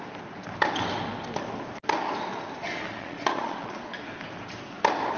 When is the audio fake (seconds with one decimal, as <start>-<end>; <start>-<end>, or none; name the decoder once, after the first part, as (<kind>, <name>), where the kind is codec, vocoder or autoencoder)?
2.9-4.0 (vocoder, Vocos)